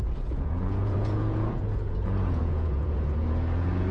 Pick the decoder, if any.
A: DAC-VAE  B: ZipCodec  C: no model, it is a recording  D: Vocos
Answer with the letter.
D